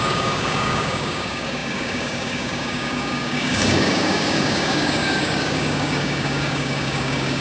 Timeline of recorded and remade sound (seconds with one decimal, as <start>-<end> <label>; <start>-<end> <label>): 0.0-7.4 remade